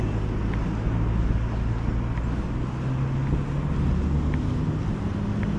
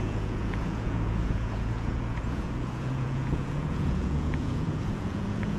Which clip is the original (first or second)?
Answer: first